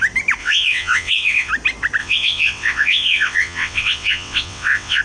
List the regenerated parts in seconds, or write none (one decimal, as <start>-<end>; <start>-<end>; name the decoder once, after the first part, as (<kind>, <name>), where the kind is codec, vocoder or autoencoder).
0.4-1.5 (vocoder, WaveNeXt); 2.0-5.0